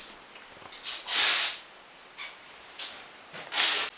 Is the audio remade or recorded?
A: recorded